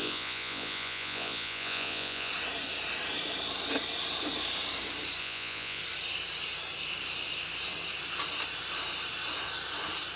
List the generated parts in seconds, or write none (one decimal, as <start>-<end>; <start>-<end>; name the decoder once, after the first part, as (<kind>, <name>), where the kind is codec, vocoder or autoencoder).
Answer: 0.0-2.3 (vocoder, Vocos); 5.2-5.8